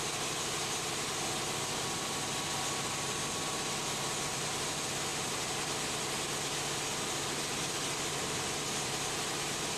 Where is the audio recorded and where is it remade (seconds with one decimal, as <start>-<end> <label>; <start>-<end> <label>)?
0.0-9.8 recorded

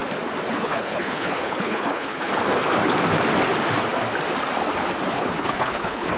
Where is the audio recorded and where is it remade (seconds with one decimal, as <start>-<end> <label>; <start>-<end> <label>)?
0.0-0.5 recorded; 0.5-2.3 remade; 2.3-5.1 recorded; 5.1-6.2 remade

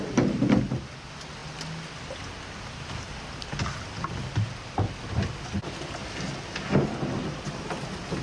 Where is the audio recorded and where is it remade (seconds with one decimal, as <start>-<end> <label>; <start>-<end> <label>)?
0.0-8.2 recorded

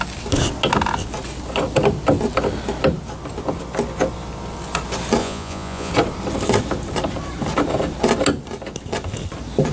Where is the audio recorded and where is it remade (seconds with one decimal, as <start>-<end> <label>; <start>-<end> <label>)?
0.0-5.2 recorded; 5.2-5.9 remade; 5.9-9.7 recorded

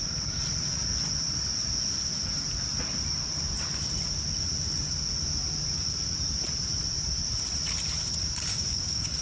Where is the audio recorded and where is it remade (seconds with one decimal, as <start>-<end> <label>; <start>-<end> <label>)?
0.0-8.5 recorded; 8.5-9.2 remade